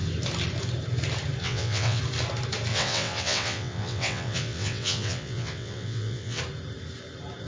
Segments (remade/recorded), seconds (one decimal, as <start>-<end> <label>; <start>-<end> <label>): 0.0-1.4 recorded; 1.4-2.0 remade; 2.0-2.7 recorded; 2.7-6.4 remade; 6.4-7.5 recorded